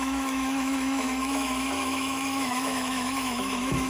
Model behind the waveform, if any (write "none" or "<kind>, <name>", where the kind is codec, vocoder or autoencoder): autoencoder, DAC-VAE